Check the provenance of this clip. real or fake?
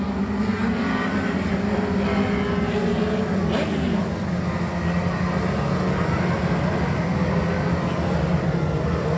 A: real